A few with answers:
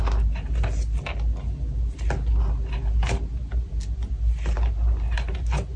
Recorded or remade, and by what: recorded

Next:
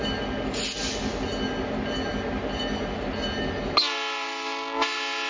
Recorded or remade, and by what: recorded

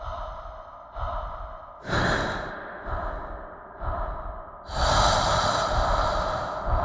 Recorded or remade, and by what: recorded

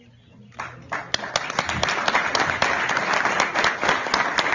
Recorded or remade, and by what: recorded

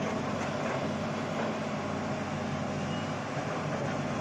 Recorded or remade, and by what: recorded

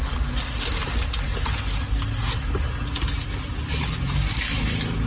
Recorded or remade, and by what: recorded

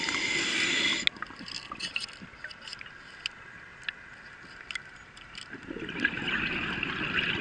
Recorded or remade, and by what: recorded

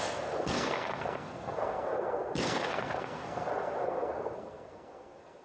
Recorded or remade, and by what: remade, codec, SNAC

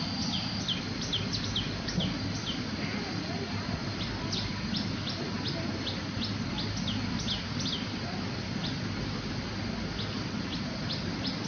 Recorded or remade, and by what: recorded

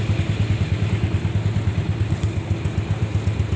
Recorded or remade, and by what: recorded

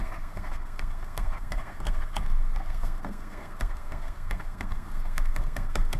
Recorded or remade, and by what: remade, codec, SNAC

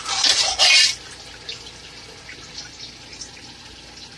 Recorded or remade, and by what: recorded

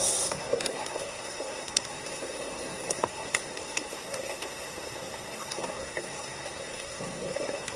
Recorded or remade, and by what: remade, codec, SNAC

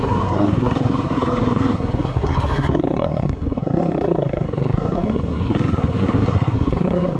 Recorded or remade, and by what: remade, codec, SNAC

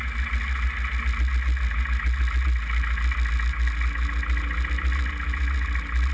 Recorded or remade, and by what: recorded